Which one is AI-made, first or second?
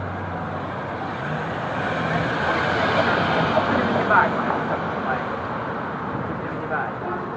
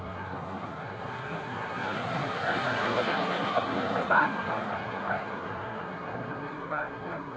second